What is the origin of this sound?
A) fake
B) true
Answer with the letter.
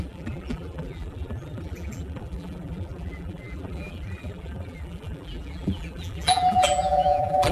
A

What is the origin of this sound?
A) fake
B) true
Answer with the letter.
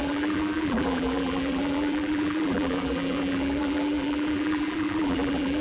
A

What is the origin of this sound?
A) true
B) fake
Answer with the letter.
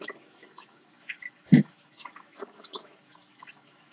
B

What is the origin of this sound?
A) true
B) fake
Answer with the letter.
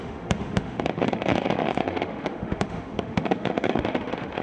B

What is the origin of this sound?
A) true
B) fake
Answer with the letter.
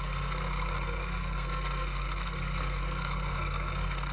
B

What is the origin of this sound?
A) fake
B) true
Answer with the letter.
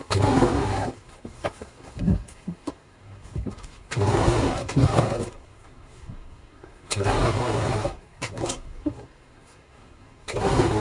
A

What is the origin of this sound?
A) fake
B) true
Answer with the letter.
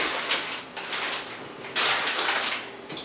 B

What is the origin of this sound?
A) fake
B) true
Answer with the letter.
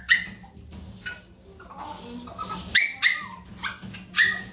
B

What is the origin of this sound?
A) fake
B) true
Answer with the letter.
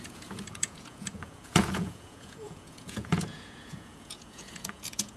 A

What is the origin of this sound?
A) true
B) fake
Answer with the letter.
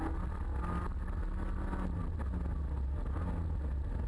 A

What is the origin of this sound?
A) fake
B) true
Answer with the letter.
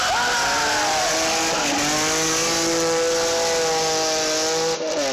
B